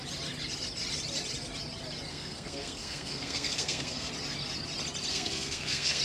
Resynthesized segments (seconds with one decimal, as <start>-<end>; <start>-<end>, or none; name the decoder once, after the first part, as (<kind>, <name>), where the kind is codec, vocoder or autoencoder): 2.1-4.1 (codec, SNAC); 5.1-6.0